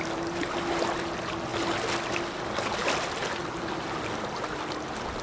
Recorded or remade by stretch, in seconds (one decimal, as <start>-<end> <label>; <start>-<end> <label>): 0.0-1.5 recorded; 1.5-2.1 remade; 2.1-5.2 recorded